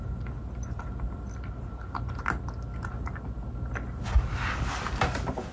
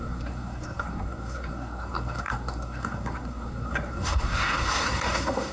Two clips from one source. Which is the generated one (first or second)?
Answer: second